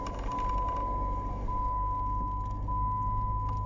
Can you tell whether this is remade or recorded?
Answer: recorded